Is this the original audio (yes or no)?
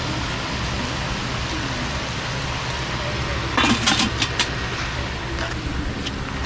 yes